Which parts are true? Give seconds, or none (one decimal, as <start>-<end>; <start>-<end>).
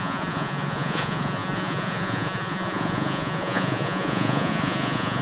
none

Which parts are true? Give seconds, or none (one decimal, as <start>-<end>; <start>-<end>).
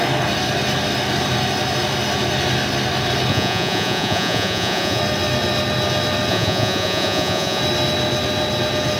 0.0-3.3; 5.0-6.3; 7.6-9.0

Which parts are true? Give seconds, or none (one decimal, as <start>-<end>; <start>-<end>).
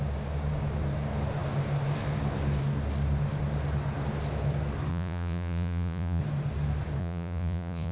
0.0-4.9; 6.2-7.0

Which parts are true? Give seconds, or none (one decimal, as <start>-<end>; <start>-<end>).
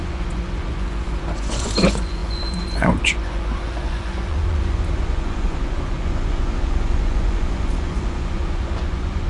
none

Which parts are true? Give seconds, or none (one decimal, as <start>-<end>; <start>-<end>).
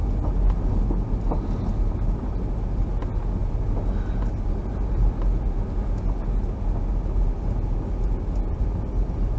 0.0-9.4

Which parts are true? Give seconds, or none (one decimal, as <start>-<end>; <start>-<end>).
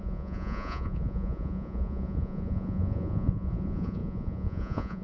none